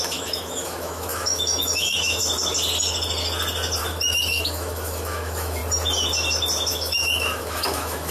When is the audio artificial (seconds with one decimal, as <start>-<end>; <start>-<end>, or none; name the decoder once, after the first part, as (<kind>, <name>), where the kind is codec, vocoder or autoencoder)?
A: 0.0-2.2 (autoencoder, DAC-VAE); 3.8-5.6; 6.7-8.1